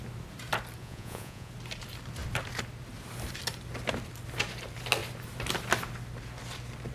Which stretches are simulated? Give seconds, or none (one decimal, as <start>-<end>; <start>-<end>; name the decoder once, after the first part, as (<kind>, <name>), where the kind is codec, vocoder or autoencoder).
0.8-1.5 (vocoder, Vocos)